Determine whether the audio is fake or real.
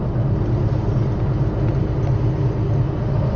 real